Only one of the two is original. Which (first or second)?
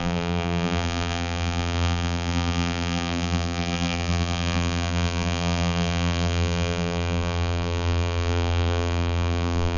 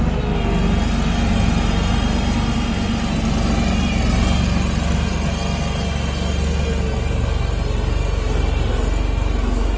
second